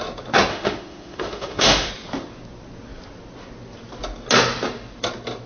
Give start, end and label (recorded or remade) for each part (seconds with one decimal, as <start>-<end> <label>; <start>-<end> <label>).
0.0-0.5 recorded; 0.5-1.9 remade; 1.9-5.5 recorded